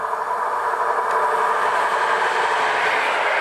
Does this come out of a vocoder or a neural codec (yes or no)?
no